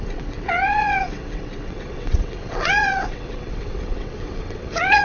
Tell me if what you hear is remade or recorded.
remade